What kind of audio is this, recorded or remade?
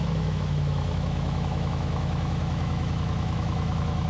remade